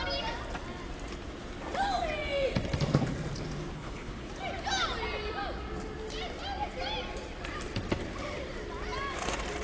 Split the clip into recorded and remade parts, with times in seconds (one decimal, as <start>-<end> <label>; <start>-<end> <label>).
0.0-3.7 recorded; 3.7-4.3 remade; 4.3-9.6 recorded